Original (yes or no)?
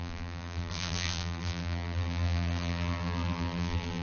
no